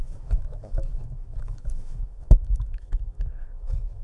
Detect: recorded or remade remade